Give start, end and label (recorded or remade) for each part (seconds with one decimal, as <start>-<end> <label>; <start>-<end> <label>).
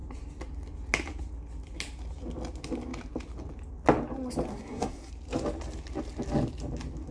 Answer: 0.0-4.5 recorded; 4.5-5.1 remade; 5.1-7.1 recorded